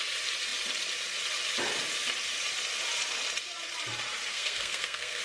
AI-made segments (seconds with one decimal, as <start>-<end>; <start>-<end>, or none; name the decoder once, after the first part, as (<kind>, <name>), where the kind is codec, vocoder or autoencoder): 4.3-5.2 (codec, SNAC)